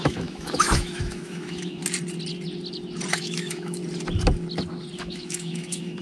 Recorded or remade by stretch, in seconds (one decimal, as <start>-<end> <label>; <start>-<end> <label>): 0.0-1.8 remade; 1.8-3.1 recorded; 3.1-3.8 remade; 3.8-5.0 recorded; 5.0-6.0 remade